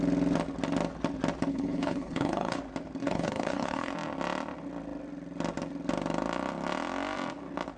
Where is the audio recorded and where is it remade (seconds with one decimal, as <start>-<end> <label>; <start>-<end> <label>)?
0.0-1.5 recorded; 1.5-2.6 remade; 2.6-3.0 recorded; 3.0-3.9 remade; 3.9-7.8 recorded